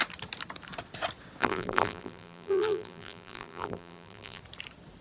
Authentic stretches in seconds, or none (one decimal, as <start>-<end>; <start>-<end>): 0.0-1.4; 4.4-5.0